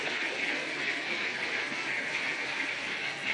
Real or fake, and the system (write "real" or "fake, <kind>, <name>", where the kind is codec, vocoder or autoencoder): fake, codec, SNAC